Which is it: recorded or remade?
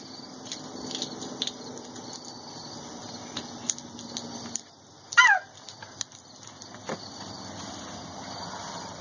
recorded